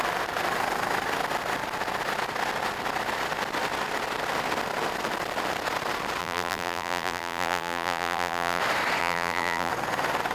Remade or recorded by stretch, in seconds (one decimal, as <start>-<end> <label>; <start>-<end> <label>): 0.0-6.2 recorded; 6.2-8.6 remade; 8.6-9.0 recorded; 9.0-9.7 remade; 9.7-10.3 recorded